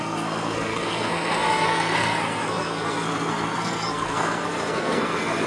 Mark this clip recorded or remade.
remade